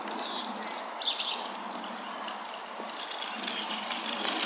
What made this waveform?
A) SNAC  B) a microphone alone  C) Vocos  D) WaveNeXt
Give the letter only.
B